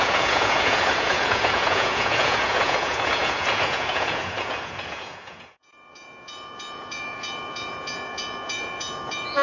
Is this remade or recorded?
remade